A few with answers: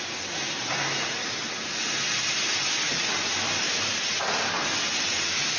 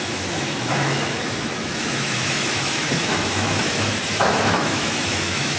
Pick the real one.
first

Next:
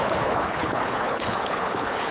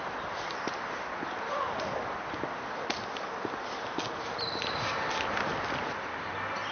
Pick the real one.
second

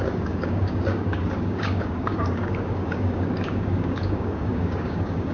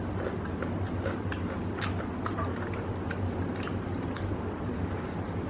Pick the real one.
second